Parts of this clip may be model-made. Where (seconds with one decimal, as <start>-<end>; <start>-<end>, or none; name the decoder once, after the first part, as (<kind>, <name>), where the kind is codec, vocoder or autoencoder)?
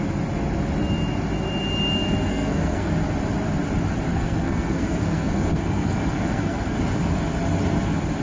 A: 2.3-2.9 (codec, SNAC); 4.1-6.8